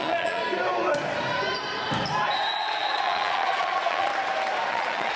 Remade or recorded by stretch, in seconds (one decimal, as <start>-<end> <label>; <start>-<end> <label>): 0.0-0.4 remade; 0.4-2.5 recorded; 2.5-4.1 remade; 4.1-4.7 recorded; 4.7-5.2 remade